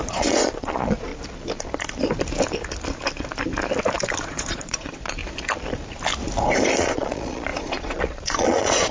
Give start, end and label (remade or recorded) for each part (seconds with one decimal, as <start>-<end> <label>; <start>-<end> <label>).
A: 0.0-1.1 remade; 1.1-4.2 recorded; 4.2-5.2 remade; 5.2-6.8 recorded; 6.8-8.9 remade